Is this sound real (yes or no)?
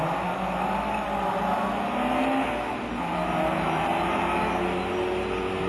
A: yes